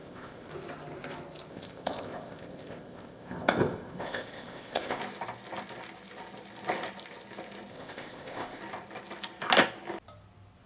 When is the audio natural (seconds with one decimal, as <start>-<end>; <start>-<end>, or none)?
0.5-1.5; 5.0-7.7; 8.6-10.7